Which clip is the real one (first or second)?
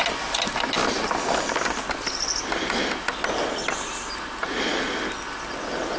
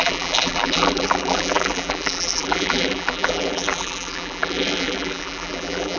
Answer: first